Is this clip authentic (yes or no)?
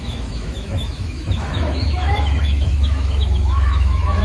no